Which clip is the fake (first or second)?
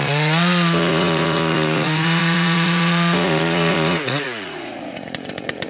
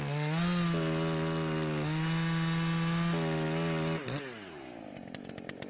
first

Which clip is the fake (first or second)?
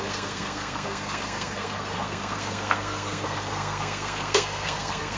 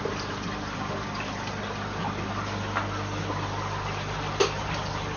first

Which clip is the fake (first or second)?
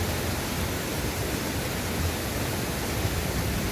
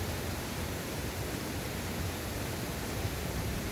second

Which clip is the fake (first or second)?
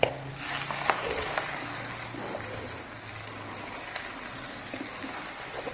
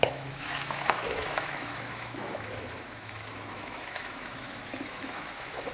second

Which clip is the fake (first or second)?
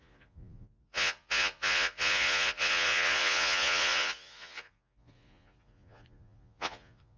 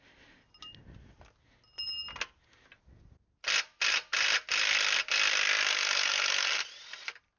first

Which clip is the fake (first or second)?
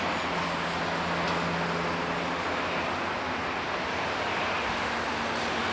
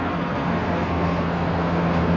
second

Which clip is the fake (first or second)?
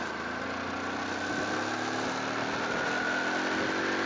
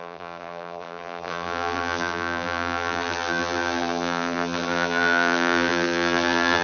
second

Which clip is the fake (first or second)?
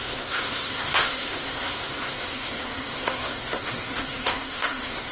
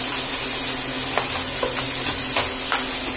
first